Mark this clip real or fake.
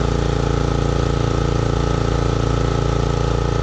real